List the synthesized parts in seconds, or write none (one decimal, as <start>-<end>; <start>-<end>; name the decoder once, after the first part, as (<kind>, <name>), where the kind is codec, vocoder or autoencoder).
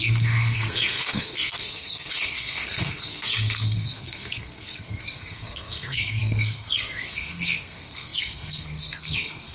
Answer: 0.0-9.5 (codec, SNAC)